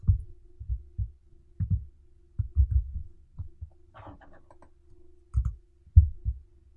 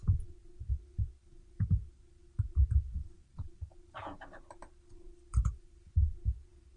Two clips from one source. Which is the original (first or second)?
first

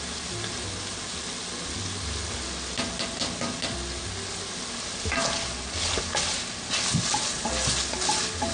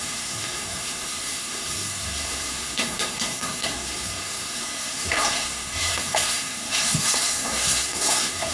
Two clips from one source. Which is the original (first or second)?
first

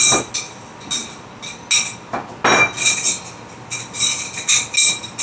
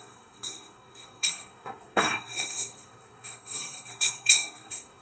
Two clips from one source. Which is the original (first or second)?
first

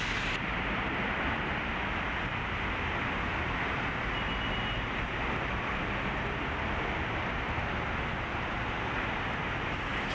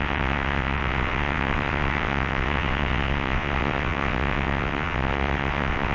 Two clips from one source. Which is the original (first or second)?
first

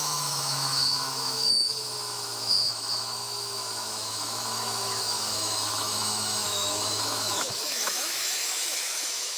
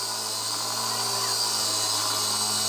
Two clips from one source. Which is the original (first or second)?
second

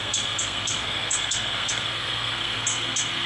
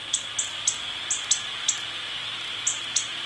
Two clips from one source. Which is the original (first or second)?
second